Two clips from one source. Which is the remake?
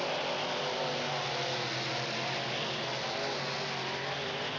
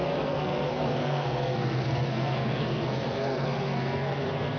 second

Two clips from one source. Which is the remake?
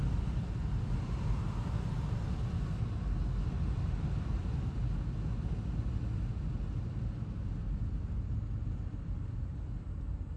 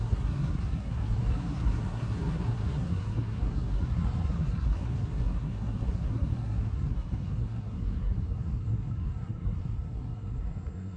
second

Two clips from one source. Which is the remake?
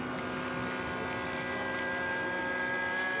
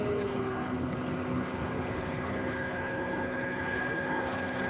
second